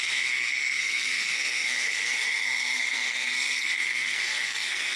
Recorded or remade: remade